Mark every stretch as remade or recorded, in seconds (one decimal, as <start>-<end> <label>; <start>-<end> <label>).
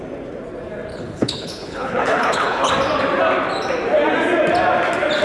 0.0-0.9 recorded; 0.9-2.7 remade; 2.7-5.2 recorded